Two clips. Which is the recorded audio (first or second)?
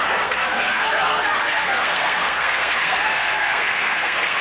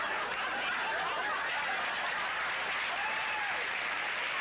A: second